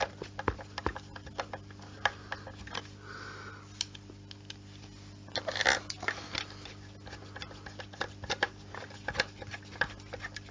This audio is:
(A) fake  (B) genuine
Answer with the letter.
B